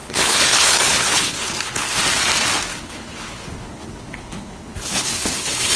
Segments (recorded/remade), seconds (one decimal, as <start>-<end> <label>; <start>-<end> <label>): 0.0-2.0 remade; 2.0-2.7 recorded; 2.7-5.8 remade